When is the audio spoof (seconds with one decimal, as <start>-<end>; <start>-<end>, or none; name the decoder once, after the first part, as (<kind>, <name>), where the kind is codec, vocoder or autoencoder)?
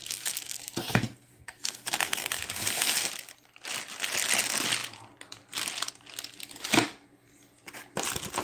0.0-3.1 (codec, SNAC)